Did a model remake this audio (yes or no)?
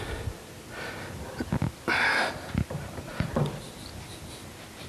no